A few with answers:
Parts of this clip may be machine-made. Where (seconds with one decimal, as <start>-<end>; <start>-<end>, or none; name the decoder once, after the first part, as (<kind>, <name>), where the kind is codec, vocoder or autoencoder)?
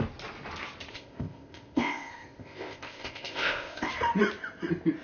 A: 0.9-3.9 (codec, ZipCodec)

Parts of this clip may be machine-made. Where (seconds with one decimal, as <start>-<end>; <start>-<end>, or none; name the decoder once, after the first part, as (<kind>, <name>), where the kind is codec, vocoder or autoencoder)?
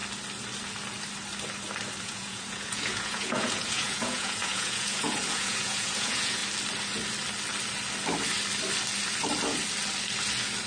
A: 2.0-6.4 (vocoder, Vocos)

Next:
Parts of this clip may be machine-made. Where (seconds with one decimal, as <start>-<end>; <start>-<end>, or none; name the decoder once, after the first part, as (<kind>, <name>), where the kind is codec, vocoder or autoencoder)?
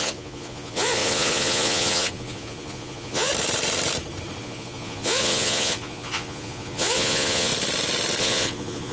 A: 0.0-3.3 (vocoder, Vocos); 4.4-7.5; 8.2-8.9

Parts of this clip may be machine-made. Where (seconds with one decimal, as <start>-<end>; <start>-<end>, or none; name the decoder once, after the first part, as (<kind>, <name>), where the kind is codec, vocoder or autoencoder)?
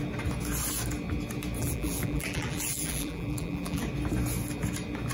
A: 1.6-3.8 (vocoder, BigVGAN v2)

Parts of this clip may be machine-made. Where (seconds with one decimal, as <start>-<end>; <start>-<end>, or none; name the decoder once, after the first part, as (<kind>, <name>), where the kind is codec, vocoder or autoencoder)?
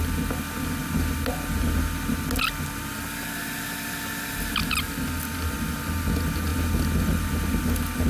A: none